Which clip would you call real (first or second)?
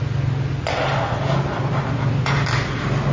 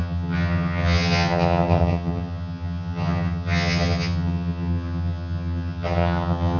first